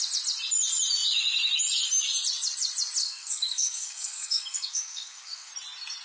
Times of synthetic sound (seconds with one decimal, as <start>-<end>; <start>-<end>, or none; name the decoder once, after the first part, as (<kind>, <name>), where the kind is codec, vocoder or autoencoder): 3.0-5.5 (codec, SNAC)